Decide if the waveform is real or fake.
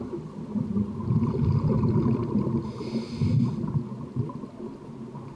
real